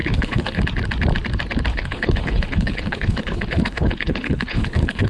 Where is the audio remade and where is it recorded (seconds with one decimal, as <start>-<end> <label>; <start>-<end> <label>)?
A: 0.0-0.6 remade; 0.6-1.7 recorded; 1.7-5.1 remade